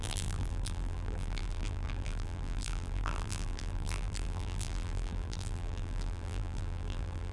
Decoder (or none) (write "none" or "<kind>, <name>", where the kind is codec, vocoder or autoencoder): vocoder, BigVGAN v2